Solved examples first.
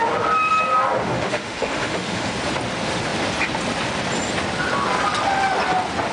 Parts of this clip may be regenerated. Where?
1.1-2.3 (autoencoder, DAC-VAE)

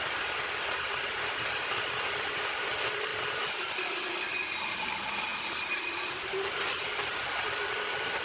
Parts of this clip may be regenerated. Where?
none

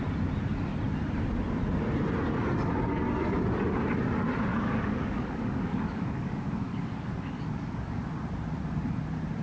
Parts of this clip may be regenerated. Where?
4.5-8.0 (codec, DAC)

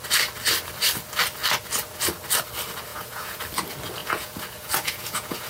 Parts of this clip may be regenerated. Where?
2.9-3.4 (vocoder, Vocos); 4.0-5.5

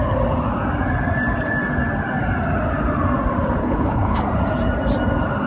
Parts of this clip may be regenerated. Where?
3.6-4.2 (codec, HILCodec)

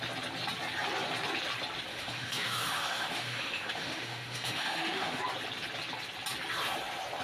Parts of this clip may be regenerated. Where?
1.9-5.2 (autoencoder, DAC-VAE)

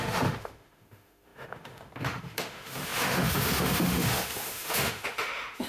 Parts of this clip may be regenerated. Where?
0.0-5.7 (autoencoder, DAC-VAE)

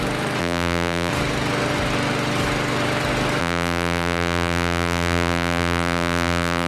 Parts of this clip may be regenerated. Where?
0.4-1.1 (vocoder, BigVGAN v2); 3.4-6.7